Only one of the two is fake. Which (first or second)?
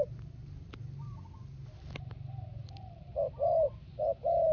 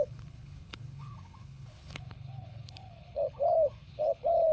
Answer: second